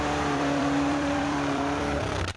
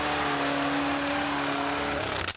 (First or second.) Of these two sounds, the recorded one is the second